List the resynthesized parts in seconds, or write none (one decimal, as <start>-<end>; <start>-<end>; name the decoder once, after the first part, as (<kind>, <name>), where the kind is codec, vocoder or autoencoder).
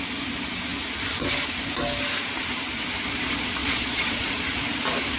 3.6-4.3 (vocoder, Vocos)